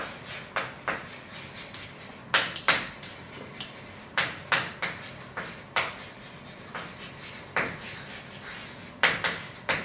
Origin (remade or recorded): recorded